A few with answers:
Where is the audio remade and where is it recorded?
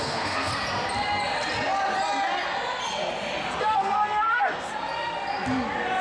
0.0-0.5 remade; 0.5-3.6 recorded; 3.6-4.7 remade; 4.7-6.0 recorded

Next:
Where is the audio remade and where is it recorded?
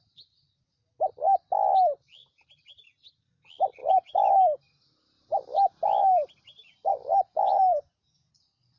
0.0-3.8 recorded; 3.8-4.3 remade; 4.3-6.9 recorded; 6.9-8.3 remade; 8.3-8.8 recorded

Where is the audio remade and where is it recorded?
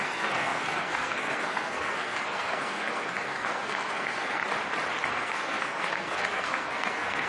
0.0-4.4 remade; 4.4-5.1 recorded; 5.1-7.3 remade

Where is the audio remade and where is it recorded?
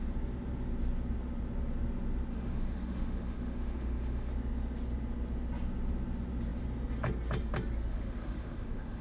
0.0-2.3 recorded; 2.3-4.3 remade; 4.3-7.9 recorded; 7.9-9.0 remade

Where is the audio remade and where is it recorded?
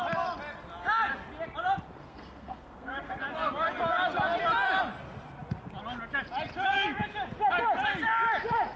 0.0-2.0 recorded; 2.0-3.1 remade; 3.1-8.8 recorded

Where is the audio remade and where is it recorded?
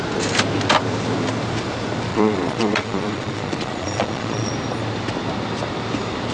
0.0-2.1 recorded; 2.1-4.5 remade; 4.5-6.3 recorded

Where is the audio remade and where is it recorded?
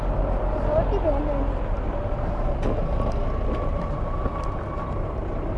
0.0-5.6 recorded